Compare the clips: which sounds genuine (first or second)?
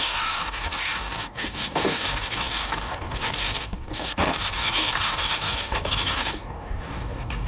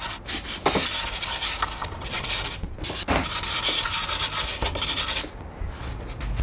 second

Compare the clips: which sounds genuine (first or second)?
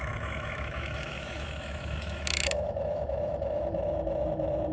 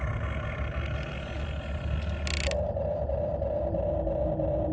second